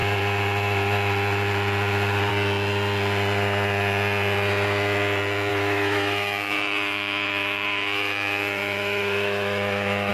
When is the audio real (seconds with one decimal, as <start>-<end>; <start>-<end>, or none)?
0.0-5.5